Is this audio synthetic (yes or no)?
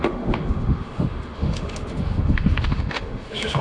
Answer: yes